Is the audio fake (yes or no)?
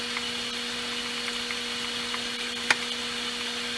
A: no